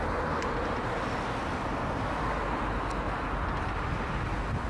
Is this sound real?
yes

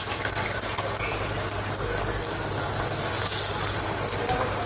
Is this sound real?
yes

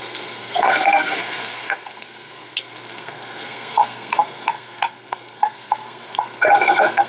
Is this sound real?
no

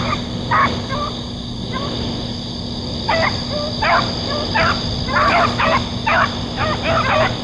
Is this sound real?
yes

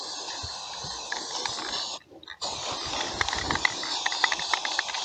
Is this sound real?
yes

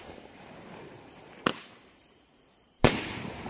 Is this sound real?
no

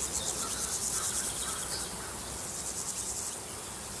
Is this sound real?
yes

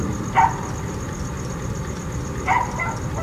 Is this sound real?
yes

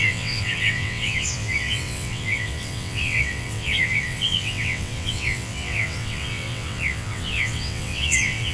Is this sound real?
no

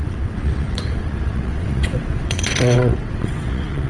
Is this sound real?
no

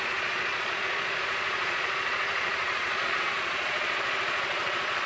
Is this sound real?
no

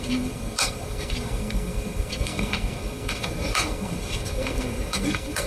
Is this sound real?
no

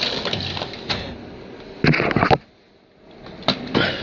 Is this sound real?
yes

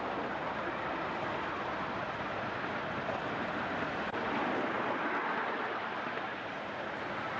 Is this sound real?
yes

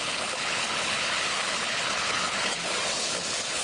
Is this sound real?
no